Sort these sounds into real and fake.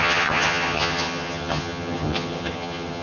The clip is fake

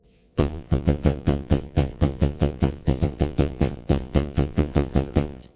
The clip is fake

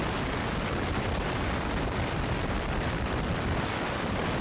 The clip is real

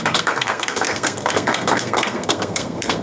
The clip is fake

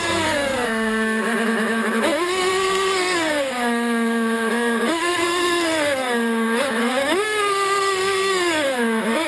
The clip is fake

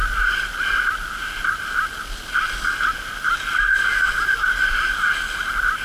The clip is real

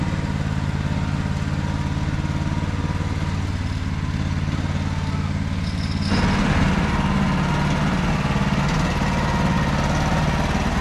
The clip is real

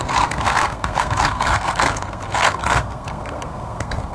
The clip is fake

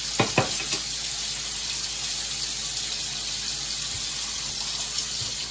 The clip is real